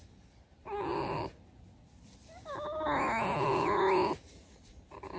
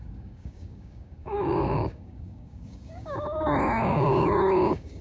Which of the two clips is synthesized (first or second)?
second